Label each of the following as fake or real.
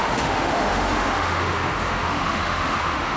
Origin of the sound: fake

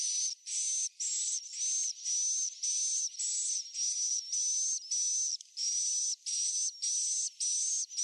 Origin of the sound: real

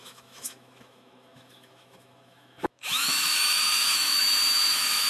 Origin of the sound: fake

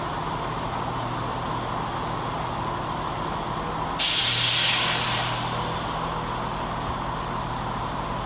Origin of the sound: real